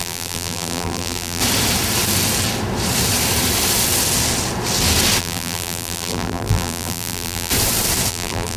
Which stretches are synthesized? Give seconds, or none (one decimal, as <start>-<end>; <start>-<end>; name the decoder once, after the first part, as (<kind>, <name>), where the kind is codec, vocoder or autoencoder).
0.0-1.4 (vocoder, BigVGAN v2); 5.2-7.5; 8.1-8.6